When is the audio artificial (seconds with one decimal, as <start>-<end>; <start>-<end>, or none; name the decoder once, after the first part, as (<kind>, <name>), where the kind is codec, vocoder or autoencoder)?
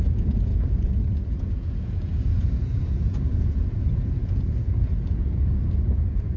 0.0-6.4 (vocoder, Vocos)